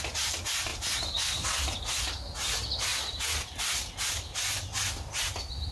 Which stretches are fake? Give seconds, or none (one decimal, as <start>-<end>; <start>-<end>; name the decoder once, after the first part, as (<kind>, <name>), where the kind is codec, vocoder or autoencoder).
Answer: none